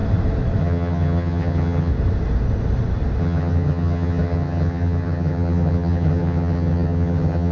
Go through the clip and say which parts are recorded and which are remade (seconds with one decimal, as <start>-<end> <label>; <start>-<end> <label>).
0.0-0.6 recorded; 0.6-1.9 remade; 1.9-3.2 recorded; 3.2-7.5 remade